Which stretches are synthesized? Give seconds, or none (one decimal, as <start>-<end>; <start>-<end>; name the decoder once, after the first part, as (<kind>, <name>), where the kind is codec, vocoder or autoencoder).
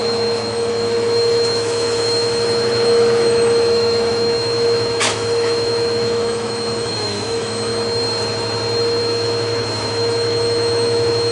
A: 0.0-7.7 (autoencoder, DAC-VAE); 9.0-11.3